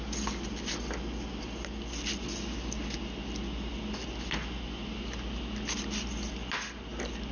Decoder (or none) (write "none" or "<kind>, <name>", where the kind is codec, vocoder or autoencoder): none